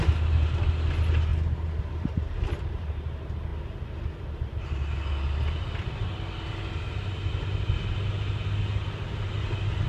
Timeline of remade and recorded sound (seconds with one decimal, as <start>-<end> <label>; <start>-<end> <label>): 0.0-9.9 recorded